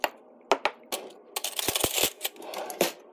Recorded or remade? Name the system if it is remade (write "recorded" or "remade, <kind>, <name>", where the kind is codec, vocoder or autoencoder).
recorded